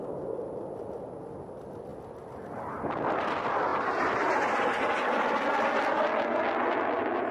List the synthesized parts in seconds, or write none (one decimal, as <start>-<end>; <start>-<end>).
none